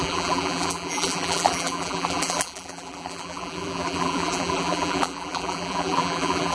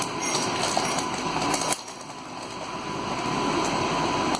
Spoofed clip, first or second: first